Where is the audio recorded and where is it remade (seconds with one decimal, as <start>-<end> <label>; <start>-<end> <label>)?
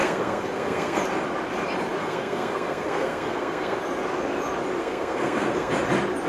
0.0-1.0 remade; 1.0-2.0 recorded; 2.0-3.8 remade; 3.8-4.8 recorded; 4.8-5.7 remade; 5.7-6.3 recorded